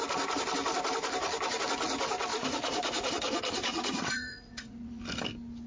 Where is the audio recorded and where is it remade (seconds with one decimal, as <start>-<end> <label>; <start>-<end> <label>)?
0.0-2.3 recorded; 2.3-3.1 remade; 3.1-3.7 recorded; 3.7-5.0 remade; 5.0-5.7 recorded